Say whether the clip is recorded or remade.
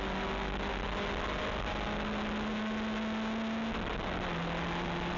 recorded